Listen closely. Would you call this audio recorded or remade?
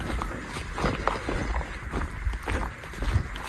recorded